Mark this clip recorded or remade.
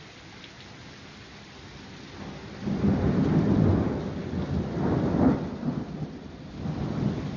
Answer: recorded